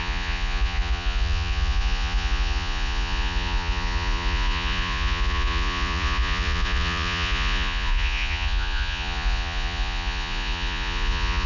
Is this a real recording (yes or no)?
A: no